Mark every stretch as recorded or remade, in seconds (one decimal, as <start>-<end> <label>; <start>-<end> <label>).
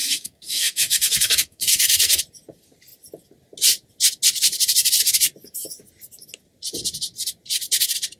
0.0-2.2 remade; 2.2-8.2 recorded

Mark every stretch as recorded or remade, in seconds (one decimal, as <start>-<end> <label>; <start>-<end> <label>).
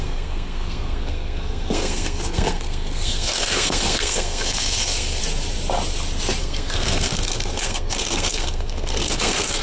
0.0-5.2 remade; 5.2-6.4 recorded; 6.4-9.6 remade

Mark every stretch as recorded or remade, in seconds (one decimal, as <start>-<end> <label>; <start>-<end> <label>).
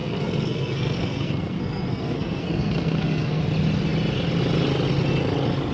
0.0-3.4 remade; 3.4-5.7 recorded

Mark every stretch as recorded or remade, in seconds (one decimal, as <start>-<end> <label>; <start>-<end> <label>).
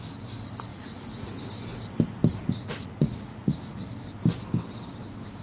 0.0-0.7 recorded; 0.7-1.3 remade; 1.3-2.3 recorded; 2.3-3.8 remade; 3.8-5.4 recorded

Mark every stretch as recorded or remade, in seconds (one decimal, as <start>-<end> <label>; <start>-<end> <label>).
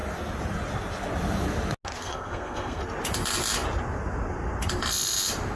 0.0-2.0 recorded; 2.0-2.8 remade; 2.8-5.6 recorded